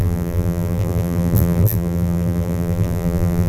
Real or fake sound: fake